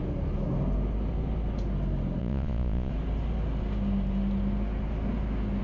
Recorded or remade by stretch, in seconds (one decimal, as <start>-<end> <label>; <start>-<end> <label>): 0.0-2.2 recorded; 2.2-2.9 remade; 2.9-5.6 recorded